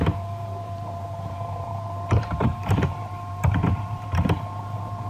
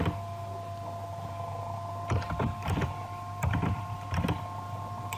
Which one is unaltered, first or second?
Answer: second